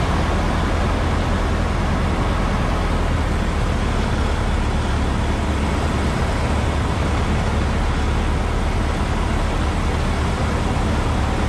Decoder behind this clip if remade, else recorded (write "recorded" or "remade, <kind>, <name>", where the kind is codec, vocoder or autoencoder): recorded